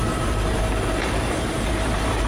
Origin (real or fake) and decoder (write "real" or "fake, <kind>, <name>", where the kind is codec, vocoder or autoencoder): fake, vocoder, BigVGAN v2